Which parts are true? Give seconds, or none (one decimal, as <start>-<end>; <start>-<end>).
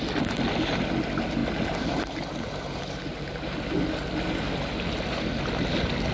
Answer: 0.0-1.4; 1.9-6.1